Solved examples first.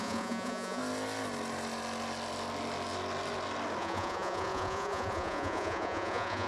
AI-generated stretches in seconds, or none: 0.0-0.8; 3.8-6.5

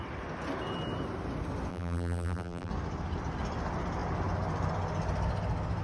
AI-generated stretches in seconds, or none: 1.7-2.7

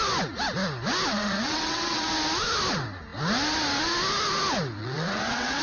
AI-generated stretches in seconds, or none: 1.1-2.1; 4.8-5.6

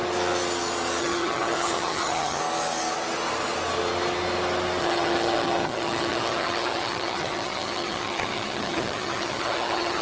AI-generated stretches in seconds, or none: 1.0-2.4; 4.8-10.0

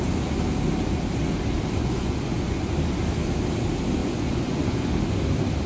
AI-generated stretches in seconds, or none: 1.8-2.6; 4.0-4.9

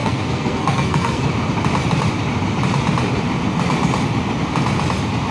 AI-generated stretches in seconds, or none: 0.0-1.2

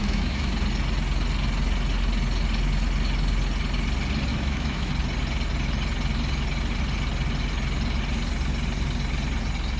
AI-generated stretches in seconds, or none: 0.0-0.5; 4.3-4.9